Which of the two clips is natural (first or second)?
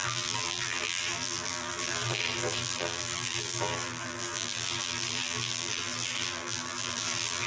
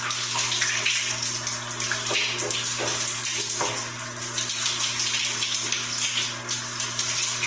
second